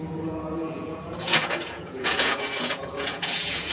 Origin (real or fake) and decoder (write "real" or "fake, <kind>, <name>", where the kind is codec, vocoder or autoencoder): fake, vocoder, Vocos